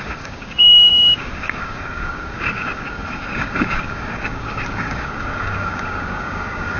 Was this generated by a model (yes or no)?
yes